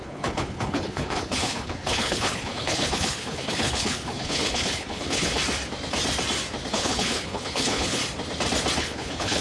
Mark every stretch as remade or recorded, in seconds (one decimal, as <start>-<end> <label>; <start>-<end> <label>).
0.0-5.4 remade; 5.4-6.7 recorded; 6.7-8.0 remade; 8.0-8.8 recorded; 8.8-9.4 remade